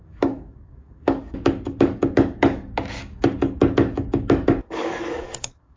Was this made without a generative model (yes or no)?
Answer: no